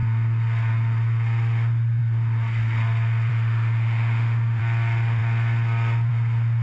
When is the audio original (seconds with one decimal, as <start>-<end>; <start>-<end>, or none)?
0.0-3.3; 4.6-6.6